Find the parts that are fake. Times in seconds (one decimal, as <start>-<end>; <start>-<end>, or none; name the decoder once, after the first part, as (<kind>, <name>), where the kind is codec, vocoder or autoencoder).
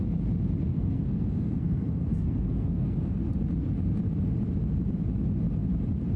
0.7-3.2 (codec, SNAC)